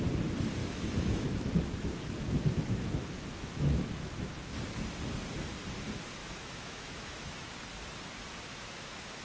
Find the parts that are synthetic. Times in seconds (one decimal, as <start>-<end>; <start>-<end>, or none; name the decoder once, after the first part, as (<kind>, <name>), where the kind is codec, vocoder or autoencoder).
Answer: 0.6-4.3 (autoencoder, DAC-VAE); 6.2-7.5; 8.5-9.2